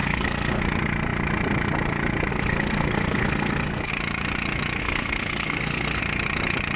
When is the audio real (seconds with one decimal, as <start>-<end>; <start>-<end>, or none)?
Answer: 0.6-2.3; 3.9-4.8; 6.0-6.8